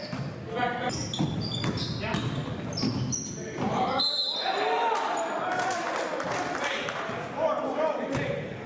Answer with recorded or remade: recorded